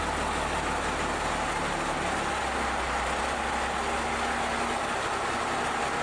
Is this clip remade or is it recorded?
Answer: recorded